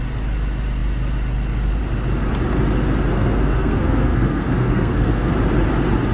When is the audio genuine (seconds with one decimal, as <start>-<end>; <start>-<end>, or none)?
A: 0.0-3.1; 5.3-6.1